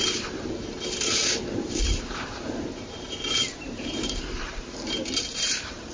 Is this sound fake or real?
fake